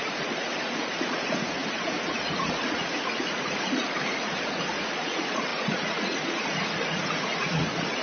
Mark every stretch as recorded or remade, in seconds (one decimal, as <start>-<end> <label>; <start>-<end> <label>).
0.0-8.0 remade